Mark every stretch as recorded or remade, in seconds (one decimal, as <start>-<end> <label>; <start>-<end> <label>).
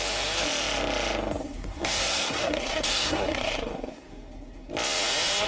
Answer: 0.0-1.4 recorded; 1.4-4.7 remade; 4.7-5.5 recorded